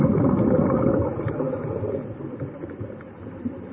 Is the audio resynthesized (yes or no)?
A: no